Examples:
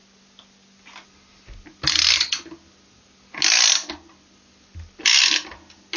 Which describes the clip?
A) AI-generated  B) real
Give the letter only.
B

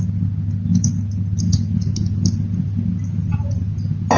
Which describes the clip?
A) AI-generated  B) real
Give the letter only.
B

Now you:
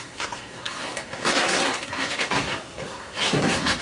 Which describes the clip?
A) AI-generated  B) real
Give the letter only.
A